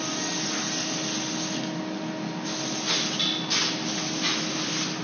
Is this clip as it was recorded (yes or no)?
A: yes